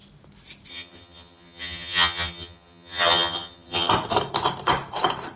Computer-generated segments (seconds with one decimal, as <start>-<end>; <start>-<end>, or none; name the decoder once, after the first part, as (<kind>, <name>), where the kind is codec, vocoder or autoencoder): 0.7-3.9 (vocoder, HiFi-GAN)

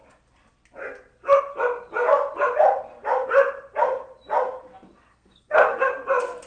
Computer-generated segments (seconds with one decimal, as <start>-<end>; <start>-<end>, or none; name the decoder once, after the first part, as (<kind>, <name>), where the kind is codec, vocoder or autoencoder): 5.1-5.9 (codec, SNAC)

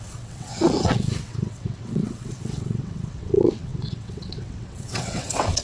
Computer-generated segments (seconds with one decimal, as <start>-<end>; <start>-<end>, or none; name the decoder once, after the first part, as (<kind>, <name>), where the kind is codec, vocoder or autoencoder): 0.0-5.6 (vocoder, WaveNeXt)

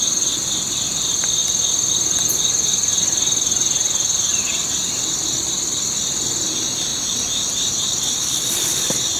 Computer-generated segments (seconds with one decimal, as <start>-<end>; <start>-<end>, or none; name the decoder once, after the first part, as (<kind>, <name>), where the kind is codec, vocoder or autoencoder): none